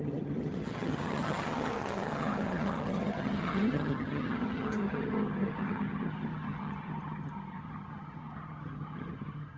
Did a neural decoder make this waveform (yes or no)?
yes